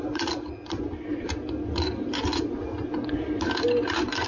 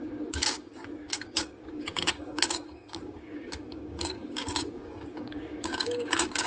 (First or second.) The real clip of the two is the first